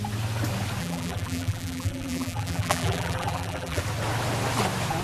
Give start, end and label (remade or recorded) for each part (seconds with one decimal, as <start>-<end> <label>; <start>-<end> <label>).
0.0-0.8 recorded; 0.8-3.8 remade; 3.8-5.0 recorded